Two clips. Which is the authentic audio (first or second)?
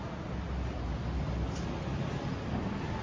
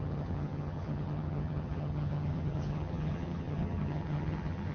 first